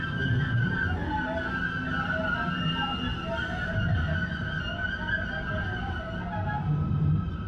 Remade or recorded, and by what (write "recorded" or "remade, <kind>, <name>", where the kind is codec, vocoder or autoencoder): recorded